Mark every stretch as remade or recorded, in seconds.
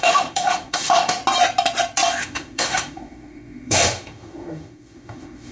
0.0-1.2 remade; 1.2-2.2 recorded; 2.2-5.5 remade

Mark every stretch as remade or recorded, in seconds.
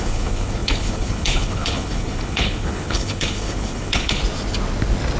0.0-4.2 remade; 4.2-5.2 recorded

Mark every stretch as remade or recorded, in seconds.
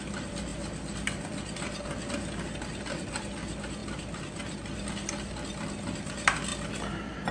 0.0-3.8 recorded; 3.8-5.1 remade; 5.1-6.5 recorded; 6.5-7.3 remade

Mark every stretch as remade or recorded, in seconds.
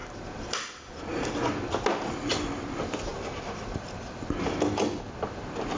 0.0-5.8 recorded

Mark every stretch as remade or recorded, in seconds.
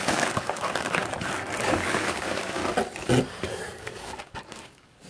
0.0-1.0 remade; 1.0-1.6 recorded; 1.6-2.6 remade; 2.6-3.8 recorded; 3.8-5.1 remade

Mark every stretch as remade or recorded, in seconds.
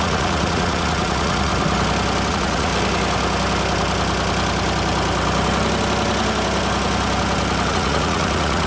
0.0-1.5 remade; 1.5-2.3 recorded; 2.3-2.7 remade; 2.7-7.7 recorded; 7.7-8.7 remade